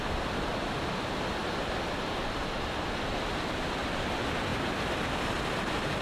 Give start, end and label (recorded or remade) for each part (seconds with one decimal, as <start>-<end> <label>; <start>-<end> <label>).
0.0-6.0 recorded